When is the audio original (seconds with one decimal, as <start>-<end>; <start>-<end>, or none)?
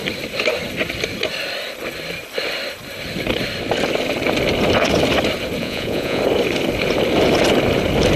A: 0.0-5.6; 6.2-8.2